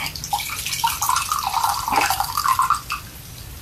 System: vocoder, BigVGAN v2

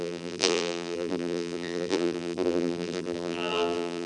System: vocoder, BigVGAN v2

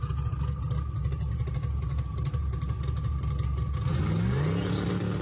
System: none